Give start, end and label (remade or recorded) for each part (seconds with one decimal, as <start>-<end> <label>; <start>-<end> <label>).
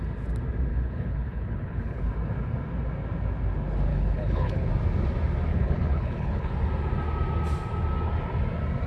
0.0-0.7 recorded; 0.7-2.1 remade; 2.1-3.9 recorded; 3.9-4.7 remade; 4.7-5.5 recorded; 5.5-6.5 remade; 6.5-8.9 recorded